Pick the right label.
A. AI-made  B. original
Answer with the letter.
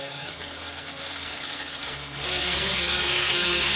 A